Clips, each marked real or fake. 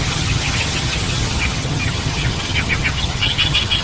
fake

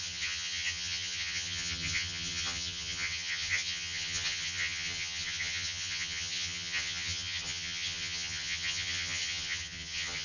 fake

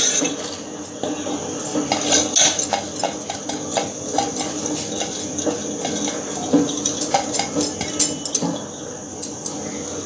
real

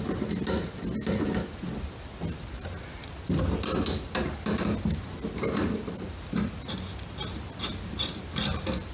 real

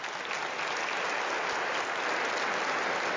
real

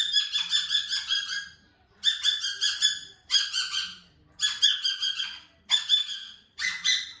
real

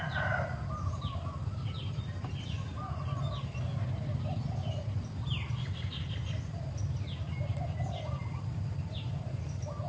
real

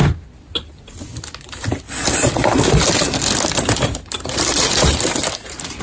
real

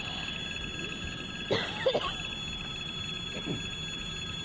real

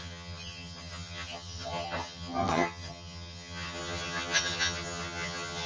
fake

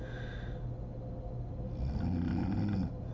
real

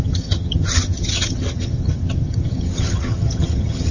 fake